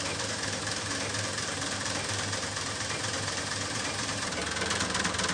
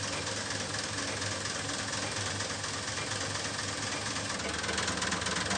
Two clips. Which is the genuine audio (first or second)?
second